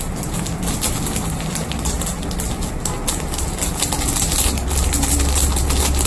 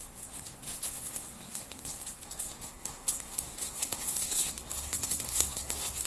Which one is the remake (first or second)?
second